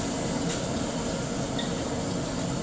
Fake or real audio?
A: real